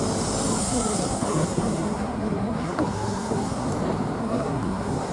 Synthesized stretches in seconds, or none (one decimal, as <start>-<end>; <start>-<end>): 0.6-3.7; 4.2-5.1

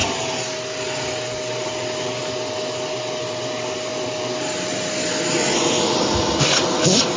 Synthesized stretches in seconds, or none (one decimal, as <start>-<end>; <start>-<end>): none

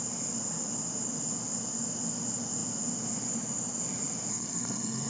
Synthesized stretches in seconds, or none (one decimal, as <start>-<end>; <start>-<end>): 4.3-5.1

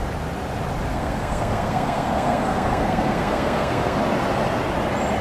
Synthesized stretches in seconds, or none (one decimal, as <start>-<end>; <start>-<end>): 0.9-4.0

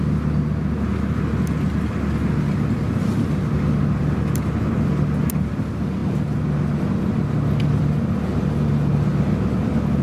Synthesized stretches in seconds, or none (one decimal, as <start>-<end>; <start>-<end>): none

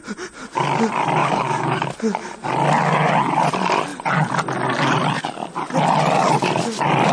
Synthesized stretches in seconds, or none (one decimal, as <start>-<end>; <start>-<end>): 1.2-1.8

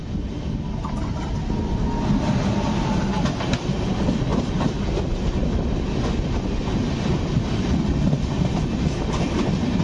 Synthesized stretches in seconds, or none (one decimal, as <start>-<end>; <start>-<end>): none

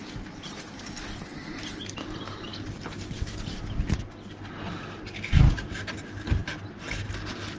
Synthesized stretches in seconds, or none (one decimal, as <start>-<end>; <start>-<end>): none